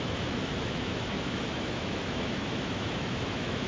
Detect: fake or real fake